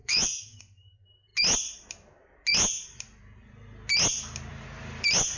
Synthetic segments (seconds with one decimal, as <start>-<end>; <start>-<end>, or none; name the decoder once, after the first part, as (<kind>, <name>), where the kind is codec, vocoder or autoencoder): 0.0-0.6 (autoencoder, DAC-VAE)